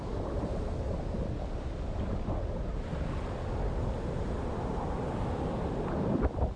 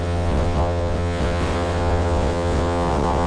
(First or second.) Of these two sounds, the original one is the first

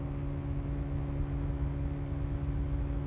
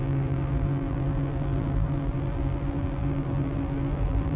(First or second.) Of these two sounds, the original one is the first